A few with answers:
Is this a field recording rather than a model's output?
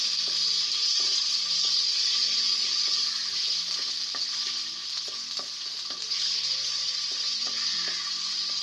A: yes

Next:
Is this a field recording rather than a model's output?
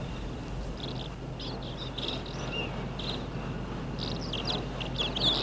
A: yes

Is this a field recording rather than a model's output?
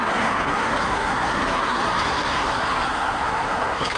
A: no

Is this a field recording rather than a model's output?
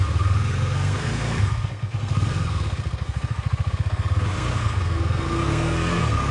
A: no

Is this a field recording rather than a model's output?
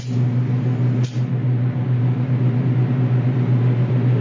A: yes